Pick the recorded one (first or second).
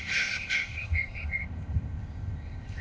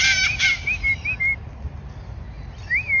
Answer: second